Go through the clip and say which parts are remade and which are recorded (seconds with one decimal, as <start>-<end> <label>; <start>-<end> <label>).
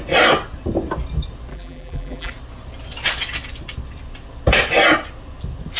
0.0-1.5 recorded; 1.5-2.3 remade; 2.3-5.8 recorded